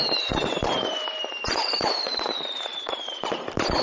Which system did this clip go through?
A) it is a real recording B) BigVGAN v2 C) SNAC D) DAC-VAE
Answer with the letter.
B